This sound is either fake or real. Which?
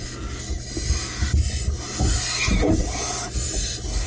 real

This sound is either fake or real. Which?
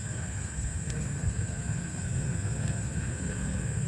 fake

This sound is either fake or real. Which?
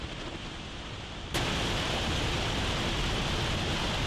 fake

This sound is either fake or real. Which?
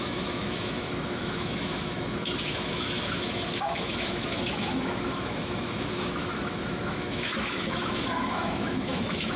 fake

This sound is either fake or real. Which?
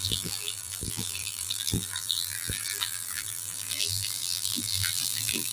fake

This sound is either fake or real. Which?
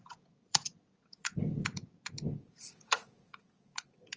fake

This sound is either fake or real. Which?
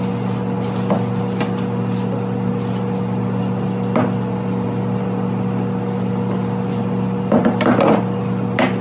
real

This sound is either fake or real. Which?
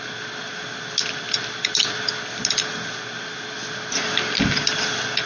real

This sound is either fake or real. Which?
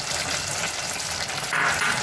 real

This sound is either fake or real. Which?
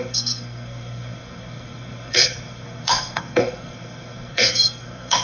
fake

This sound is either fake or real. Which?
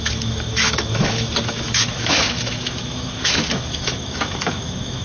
fake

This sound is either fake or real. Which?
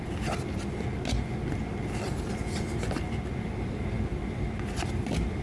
real